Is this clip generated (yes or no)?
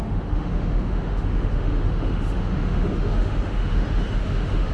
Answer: yes